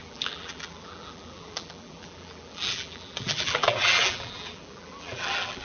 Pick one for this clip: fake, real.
fake